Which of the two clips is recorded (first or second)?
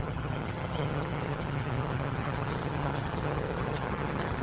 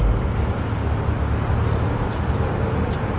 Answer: second